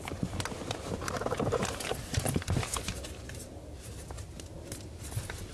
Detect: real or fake real